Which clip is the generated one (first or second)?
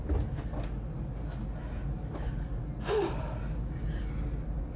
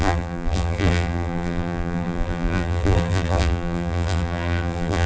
second